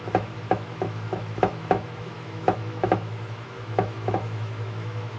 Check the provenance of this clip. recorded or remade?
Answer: remade